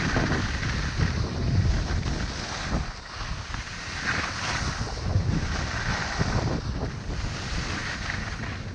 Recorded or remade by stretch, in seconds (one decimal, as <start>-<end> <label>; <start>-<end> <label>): 0.0-8.7 recorded